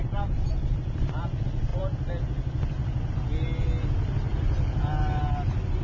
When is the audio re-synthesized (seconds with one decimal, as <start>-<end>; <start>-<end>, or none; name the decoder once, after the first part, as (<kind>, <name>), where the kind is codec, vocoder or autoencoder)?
none